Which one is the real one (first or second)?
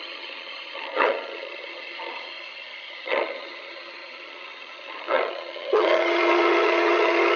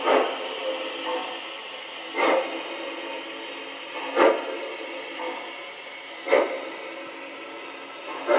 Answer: second